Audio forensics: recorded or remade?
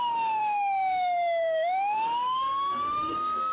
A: remade